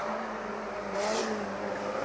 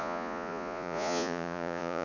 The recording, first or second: first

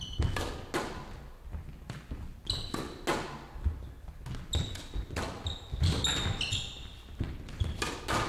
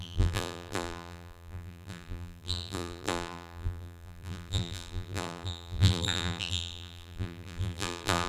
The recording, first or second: first